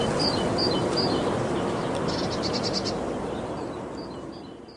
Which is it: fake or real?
real